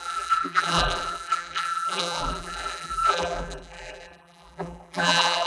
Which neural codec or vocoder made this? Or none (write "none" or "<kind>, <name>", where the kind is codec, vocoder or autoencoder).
vocoder, BigVGAN v2